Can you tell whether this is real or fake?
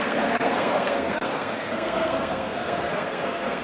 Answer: fake